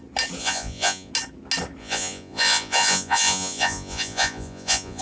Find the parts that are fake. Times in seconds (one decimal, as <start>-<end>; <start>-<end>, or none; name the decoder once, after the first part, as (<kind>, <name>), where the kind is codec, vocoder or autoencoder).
0.4-1.1 (vocoder, Vocos); 1.8-5.0